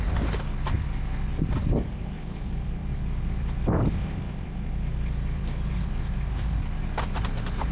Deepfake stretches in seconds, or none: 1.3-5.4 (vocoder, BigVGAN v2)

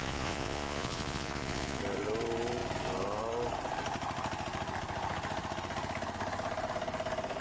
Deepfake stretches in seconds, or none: 0.0-1.8 (vocoder, Vocos)

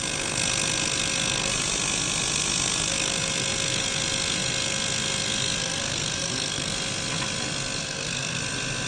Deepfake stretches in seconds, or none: 5.6-6.7 (codec, SNAC); 7.8-8.4

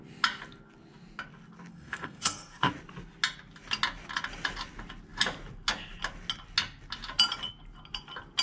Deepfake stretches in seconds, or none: 1.7-2.7 (codec, SNAC)

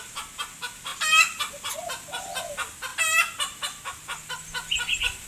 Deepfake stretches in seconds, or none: none

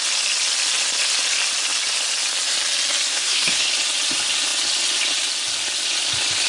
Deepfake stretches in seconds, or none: 3.1-3.7 (codec, SNAC)

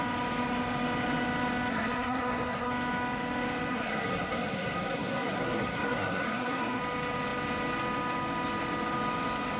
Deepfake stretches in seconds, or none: 1.7-2.7 (codec, SNAC); 3.7-6.8

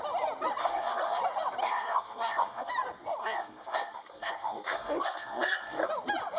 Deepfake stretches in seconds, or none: 0.6-1.2 (codec, SNAC); 1.6-2.7; 3.2-5.9